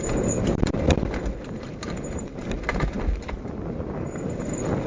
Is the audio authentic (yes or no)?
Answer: yes